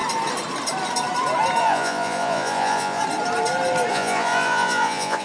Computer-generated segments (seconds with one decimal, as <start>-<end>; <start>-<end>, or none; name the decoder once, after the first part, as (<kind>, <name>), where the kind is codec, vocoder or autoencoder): 1.6-3.0 (vocoder, Vocos); 3.9-5.2

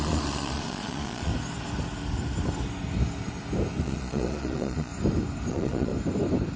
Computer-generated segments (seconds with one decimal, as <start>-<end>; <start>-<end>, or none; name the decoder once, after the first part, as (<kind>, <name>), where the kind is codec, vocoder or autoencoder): 0.0-1.3 (vocoder, Vocos); 3.8-4.9; 5.5-5.9

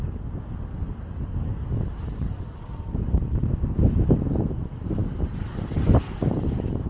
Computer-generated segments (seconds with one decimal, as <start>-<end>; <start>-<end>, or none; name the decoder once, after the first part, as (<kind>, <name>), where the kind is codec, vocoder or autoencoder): none

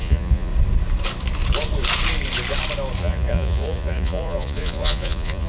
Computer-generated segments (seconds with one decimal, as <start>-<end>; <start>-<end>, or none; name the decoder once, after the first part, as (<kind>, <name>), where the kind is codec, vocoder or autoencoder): 0.0-0.5 (vocoder, Vocos); 3.0-5.5

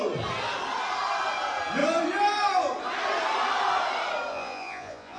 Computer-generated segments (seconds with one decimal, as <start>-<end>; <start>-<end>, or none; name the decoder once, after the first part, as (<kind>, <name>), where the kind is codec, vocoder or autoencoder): 4.3-5.2 (vocoder, Vocos)

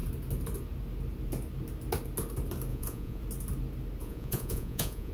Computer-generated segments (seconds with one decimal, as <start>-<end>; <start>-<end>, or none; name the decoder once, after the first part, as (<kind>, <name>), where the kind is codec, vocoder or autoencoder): 2.7-3.2 (vocoder, Vocos); 4.0-5.1

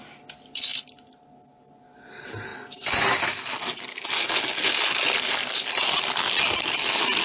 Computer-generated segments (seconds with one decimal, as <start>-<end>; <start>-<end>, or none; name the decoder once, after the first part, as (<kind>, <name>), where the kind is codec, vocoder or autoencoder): none